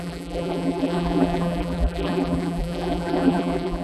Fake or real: fake